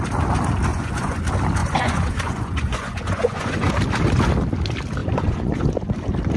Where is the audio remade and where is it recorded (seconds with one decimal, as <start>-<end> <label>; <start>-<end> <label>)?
0.0-0.7 recorded; 0.7-1.2 remade; 1.2-1.6 recorded; 1.6-3.7 remade; 3.7-5.0 recorded; 5.0-5.7 remade; 5.7-6.4 recorded